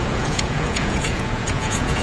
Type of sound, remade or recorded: remade